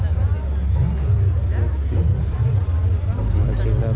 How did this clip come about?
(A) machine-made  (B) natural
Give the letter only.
B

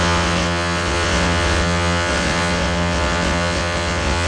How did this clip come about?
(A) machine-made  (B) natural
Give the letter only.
A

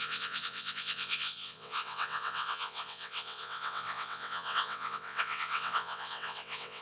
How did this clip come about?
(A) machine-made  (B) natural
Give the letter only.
A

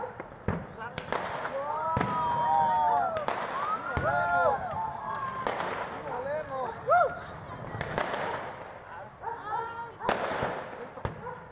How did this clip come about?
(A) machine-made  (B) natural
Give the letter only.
B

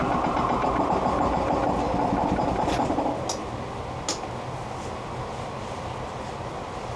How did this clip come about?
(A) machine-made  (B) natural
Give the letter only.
B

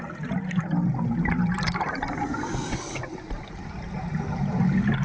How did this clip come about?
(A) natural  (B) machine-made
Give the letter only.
A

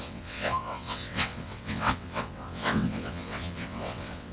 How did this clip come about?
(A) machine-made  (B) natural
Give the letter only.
A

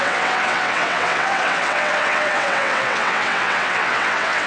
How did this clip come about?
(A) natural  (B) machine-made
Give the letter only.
B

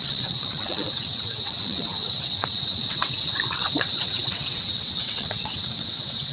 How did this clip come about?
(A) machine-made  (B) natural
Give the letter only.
A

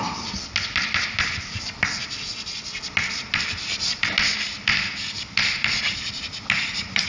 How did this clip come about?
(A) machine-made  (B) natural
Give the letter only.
B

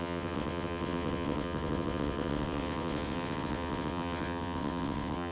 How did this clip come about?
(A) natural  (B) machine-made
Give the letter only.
B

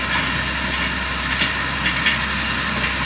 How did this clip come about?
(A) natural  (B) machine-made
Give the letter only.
A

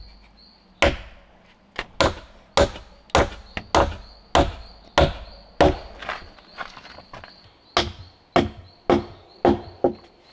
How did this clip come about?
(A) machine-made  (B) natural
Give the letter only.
B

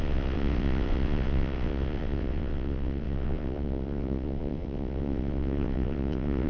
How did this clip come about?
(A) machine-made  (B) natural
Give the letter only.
A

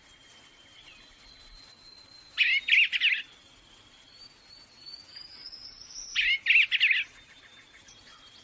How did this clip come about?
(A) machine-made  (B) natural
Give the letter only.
B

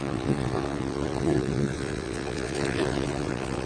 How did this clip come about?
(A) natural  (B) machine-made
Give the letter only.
B